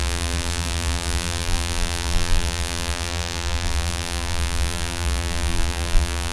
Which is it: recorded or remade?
remade